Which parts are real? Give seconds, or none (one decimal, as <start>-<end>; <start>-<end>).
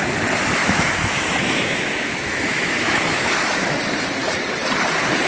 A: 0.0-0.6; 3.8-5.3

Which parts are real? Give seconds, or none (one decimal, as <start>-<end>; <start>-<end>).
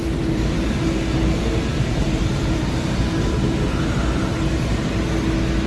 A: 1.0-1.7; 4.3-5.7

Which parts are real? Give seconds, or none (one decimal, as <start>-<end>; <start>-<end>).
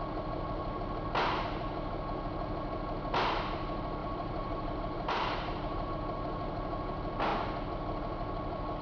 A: 0.0-4.0; 5.9-8.8